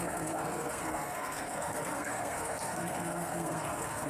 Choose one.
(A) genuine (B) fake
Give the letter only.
B